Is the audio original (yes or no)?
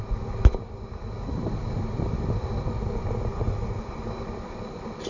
yes